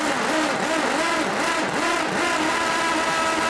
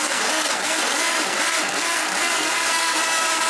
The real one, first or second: first